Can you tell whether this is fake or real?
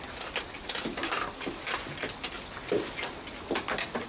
real